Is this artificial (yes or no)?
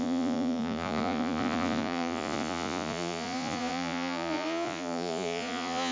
yes